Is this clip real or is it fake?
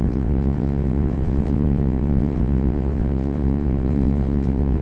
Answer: fake